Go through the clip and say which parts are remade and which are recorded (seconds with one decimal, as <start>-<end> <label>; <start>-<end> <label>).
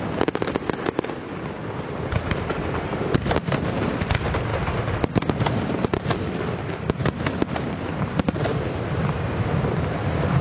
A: 0.0-1.6 recorded; 1.6-3.9 remade; 3.9-4.5 recorded; 4.5-8.6 remade; 8.6-10.4 recorded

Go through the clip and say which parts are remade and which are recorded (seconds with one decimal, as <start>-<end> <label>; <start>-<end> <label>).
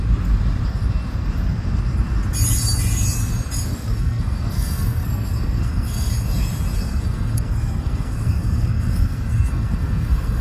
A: 0.0-3.7 recorded; 3.7-6.1 remade; 6.1-6.8 recorded; 6.8-10.4 remade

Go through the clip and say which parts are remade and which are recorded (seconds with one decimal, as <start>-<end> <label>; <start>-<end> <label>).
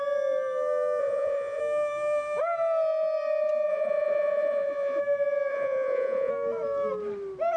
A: 0.0-1.0 recorded; 1.0-1.6 remade; 1.6-3.7 recorded; 3.7-5.0 remade; 5.0-5.5 recorded; 5.5-6.3 remade; 6.3-7.6 recorded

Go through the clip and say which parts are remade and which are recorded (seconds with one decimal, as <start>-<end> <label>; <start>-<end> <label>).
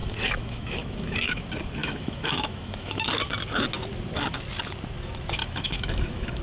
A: 0.0-1.4 remade; 1.4-1.8 recorded; 1.8-3.1 remade; 3.1-5.4 recorded; 5.4-6.4 remade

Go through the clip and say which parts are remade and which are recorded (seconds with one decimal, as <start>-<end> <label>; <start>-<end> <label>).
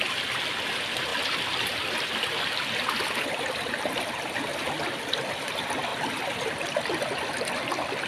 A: 0.0-8.1 recorded